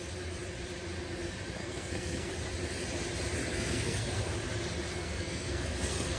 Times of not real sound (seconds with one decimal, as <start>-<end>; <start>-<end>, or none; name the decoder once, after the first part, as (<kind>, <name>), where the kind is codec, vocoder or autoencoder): 1.6-2.3 (codec, SNAC); 3.5-4.3; 4.9-6.2